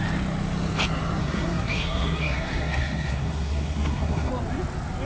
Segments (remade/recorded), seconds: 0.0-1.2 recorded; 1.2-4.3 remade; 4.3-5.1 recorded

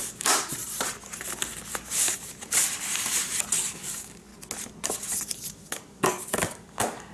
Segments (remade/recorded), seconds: 0.0-0.5 remade; 0.5-3.7 recorded; 3.7-4.3 remade; 4.3-5.5 recorded; 5.5-7.1 remade